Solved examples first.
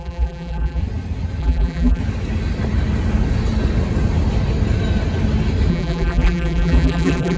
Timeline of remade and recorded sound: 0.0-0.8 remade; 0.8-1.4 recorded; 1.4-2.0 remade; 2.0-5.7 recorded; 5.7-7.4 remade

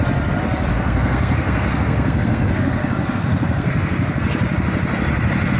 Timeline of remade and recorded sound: 0.0-0.7 recorded; 0.7-4.1 remade; 4.1-5.6 recorded

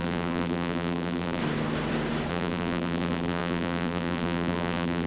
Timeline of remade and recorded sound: 0.0-1.4 remade; 1.4-2.3 recorded; 2.3-5.1 remade

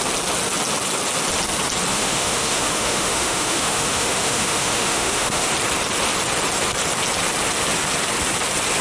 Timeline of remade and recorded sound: 0.0-1.9 recorded; 1.9-5.5 remade; 5.5-8.8 recorded

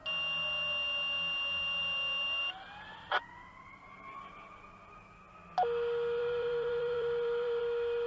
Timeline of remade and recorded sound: 0.0-3.1 recorded; 3.1-5.0 remade; 5.0-6.2 recorded; 6.2-7.6 remade; 7.6-8.1 recorded

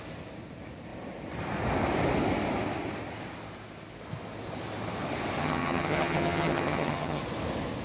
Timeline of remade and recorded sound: 0.0-5.4 recorded; 5.4-7.2 remade; 7.2-7.8 recorded

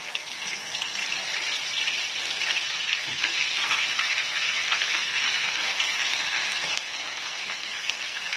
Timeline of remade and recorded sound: 0.0-1.0 remade; 1.0-2.2 recorded; 2.2-8.4 remade